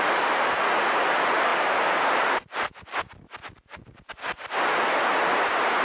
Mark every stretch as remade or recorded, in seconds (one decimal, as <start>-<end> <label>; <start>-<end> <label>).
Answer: 0.0-5.8 remade